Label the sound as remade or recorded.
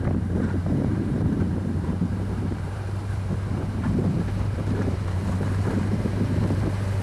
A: remade